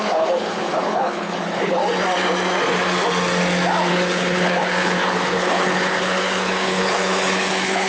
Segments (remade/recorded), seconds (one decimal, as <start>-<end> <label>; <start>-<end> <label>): 0.0-1.8 remade; 1.8-3.9 recorded; 3.9-7.9 remade